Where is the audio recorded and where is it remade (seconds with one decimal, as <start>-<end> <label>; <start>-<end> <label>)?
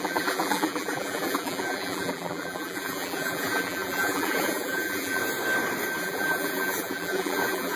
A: 0.0-5.2 remade; 5.2-6.0 recorded; 6.0-7.8 remade